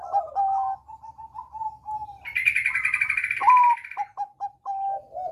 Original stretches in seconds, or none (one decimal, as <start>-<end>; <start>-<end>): 0.0-5.3